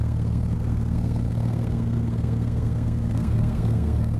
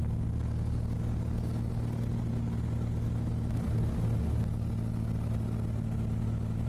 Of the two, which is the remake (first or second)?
first